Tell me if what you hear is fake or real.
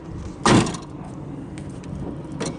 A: real